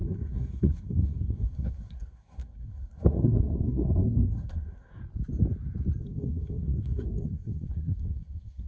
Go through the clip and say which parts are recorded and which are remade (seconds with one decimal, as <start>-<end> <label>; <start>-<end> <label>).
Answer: 0.0-5.0 remade; 5.0-6.0 recorded; 6.0-8.7 remade